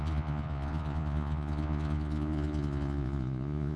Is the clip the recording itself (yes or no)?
no